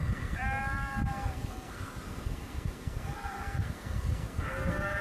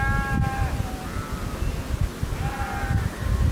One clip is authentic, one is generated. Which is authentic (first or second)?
second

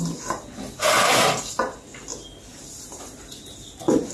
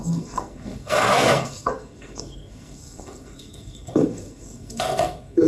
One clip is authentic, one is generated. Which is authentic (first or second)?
first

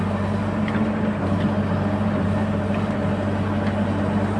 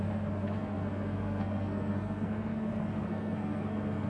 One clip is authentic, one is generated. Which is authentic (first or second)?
first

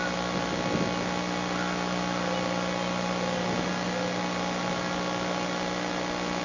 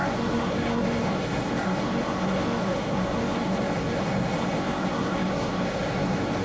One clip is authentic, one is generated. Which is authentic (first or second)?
first